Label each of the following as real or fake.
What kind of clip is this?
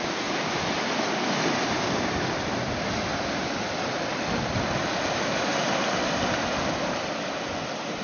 real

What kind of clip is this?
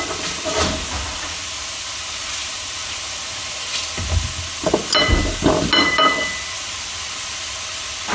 real